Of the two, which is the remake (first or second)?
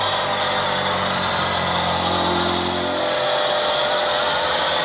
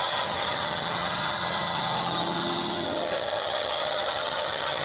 second